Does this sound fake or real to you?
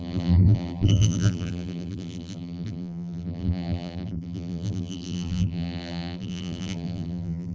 fake